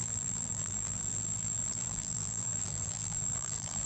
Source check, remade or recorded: remade